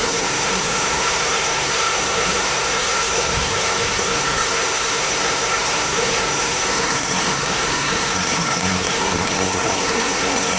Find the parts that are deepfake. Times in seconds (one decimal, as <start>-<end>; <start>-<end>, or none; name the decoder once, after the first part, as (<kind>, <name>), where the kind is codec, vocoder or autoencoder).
0.0-10.6 (codec, SNAC)